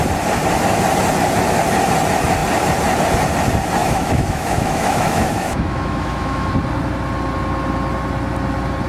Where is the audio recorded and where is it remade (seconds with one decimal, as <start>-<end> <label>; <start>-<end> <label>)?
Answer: 0.0-3.8 recorded; 3.8-6.5 remade; 6.5-8.9 recorded